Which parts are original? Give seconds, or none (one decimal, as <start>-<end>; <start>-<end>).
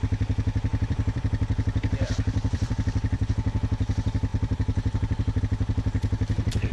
0.0-0.7; 3.3-4.3; 5.4-6.7